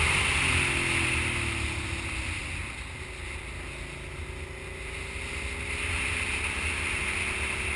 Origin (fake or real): real